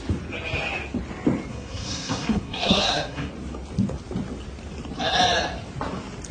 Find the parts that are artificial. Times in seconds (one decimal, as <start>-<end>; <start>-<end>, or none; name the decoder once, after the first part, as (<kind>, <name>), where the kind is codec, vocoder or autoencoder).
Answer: 1.5-3.3 (codec, SNAC)